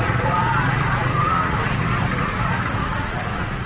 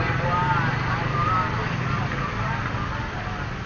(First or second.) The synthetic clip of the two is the first